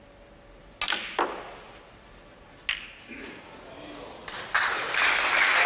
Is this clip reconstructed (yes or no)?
no